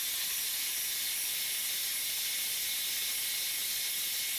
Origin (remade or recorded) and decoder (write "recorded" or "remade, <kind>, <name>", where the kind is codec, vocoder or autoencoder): recorded